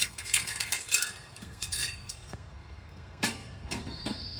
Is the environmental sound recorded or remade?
remade